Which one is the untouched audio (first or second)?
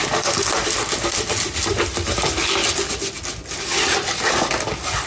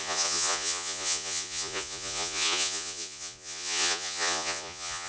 first